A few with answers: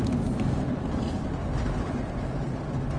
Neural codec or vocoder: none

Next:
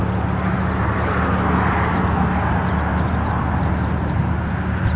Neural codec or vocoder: none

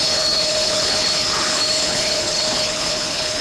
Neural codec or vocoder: codec, HILCodec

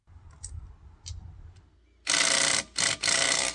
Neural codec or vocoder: none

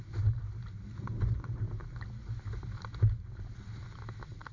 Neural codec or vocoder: none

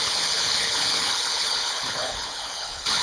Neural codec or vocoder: codec, HILCodec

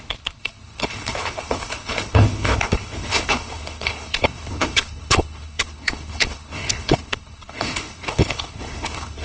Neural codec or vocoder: codec, HILCodec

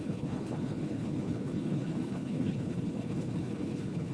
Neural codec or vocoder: codec, HILCodec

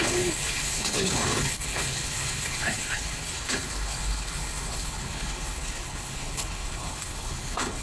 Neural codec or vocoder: codec, HILCodec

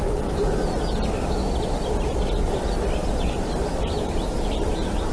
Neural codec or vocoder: none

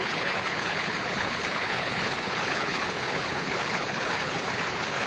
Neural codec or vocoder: codec, HILCodec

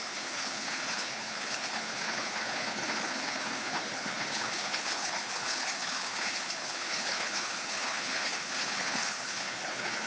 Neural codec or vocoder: codec, HILCodec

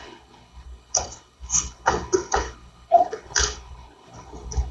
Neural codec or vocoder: codec, HILCodec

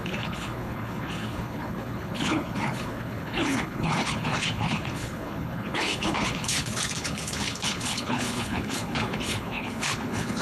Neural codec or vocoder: codec, HILCodec